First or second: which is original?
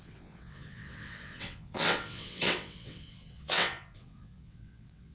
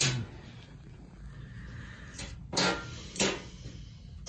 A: second